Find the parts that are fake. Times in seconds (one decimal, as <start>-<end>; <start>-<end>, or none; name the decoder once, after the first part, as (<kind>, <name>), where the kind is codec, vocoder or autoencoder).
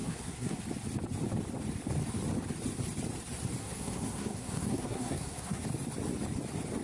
0.0-0.6 (codec, SNAC); 3.6-5.6